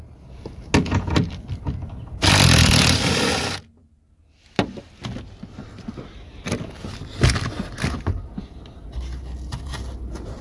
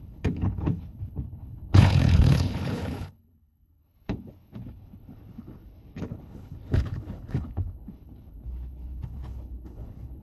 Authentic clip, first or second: first